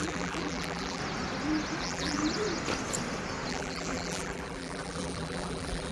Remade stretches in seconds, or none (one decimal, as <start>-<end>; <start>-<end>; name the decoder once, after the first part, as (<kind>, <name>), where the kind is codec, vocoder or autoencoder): 0.0-1.0 (vocoder, BigVGAN v2); 1.8-2.2; 3.5-5.9